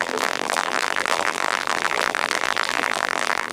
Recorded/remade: remade